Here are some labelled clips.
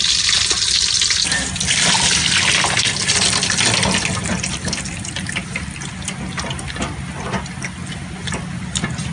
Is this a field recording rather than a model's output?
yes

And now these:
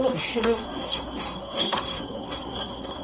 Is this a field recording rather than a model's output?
no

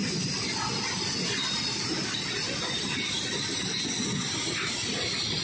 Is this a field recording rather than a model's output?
yes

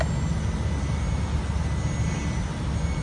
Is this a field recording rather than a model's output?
yes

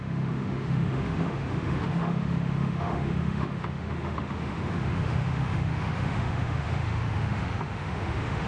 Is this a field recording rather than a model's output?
no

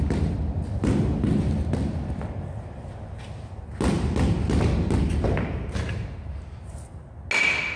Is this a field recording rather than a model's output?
yes